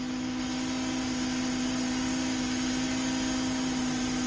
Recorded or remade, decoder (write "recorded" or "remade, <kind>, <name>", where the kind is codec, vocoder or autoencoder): recorded